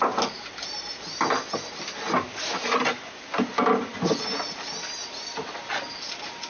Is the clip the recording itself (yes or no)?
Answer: yes